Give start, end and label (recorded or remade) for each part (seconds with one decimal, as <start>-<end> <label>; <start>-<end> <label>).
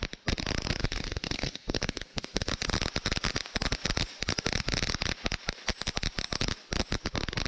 0.0-0.8 recorded; 0.8-2.5 remade; 2.5-7.5 recorded